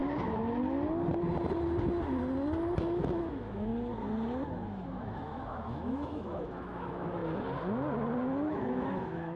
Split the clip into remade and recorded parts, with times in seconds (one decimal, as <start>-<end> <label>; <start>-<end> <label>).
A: 0.0-2.8 recorded; 2.8-3.7 remade; 3.7-4.5 recorded; 4.5-7.2 remade; 7.2-8.5 recorded; 8.5-9.4 remade